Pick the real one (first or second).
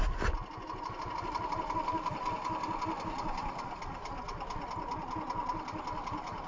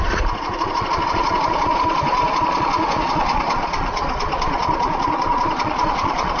first